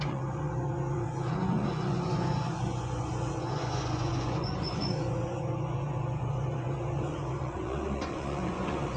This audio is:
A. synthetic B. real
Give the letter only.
A